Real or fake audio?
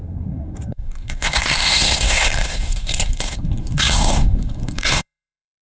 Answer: fake